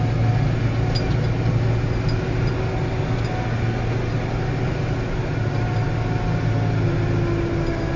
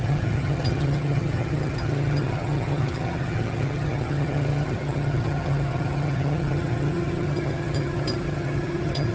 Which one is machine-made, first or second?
second